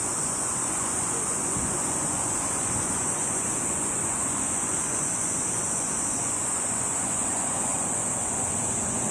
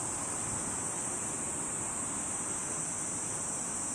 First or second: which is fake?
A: first